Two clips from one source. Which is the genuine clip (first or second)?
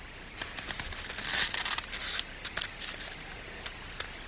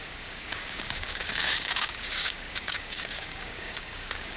first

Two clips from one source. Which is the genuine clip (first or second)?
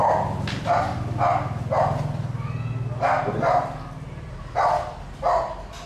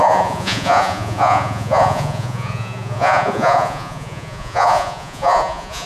first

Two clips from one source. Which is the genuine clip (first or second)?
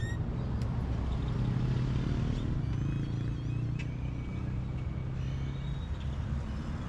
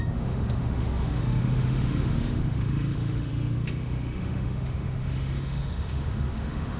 first